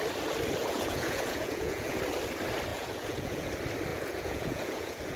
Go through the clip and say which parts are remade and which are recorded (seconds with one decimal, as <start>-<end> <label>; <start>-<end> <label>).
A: 0.0-0.6 recorded; 0.6-2.0 remade; 2.0-2.7 recorded; 2.7-3.5 remade; 3.5-3.9 recorded; 3.9-5.2 remade